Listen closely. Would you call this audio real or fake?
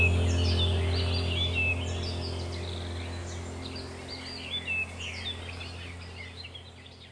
real